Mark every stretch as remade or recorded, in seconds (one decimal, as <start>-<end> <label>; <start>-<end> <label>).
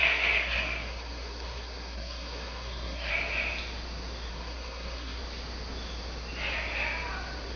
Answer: 0.0-3.1 remade; 3.1-4.3 recorded; 4.3-5.2 remade; 5.2-7.6 recorded